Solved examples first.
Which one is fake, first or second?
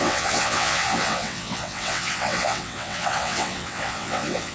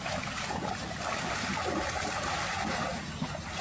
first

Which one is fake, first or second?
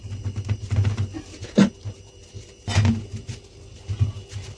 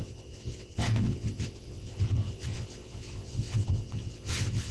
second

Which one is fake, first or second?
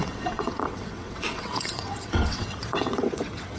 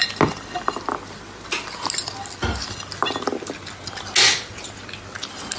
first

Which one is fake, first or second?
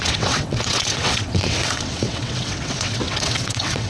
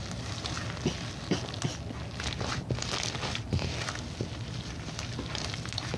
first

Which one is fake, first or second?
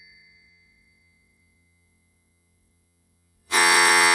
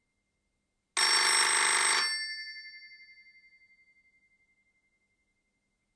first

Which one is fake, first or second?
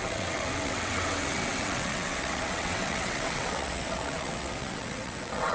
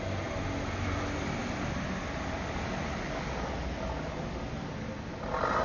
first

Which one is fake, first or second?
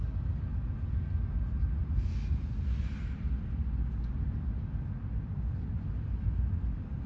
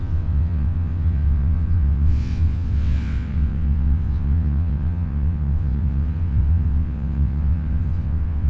second